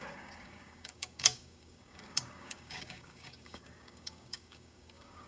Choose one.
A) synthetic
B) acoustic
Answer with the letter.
A